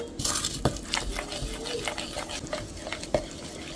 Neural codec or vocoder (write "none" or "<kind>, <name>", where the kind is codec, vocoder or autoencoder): none